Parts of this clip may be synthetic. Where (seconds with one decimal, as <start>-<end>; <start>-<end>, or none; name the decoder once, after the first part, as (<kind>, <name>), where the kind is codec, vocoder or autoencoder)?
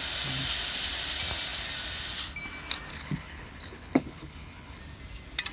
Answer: 2.9-4.8 (codec, HILCodec)